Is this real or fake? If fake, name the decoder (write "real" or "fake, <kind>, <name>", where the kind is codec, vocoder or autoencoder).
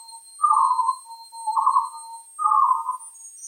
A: real